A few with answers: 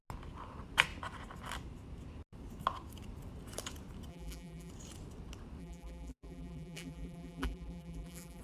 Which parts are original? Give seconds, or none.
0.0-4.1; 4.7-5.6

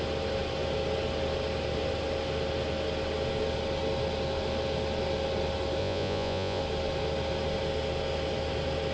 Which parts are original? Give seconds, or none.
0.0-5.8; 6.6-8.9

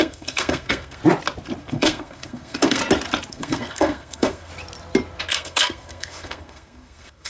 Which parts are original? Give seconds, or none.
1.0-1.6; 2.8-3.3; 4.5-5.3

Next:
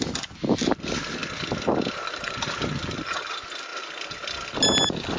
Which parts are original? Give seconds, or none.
0.0-5.2